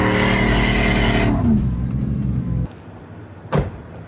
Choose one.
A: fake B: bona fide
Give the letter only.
B